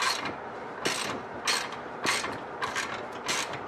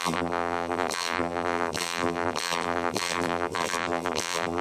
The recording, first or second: first